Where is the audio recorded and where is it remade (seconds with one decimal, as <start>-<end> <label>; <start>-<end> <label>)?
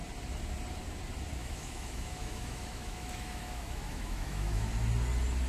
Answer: 0.0-1.4 recorded; 1.4-4.7 remade; 4.7-5.5 recorded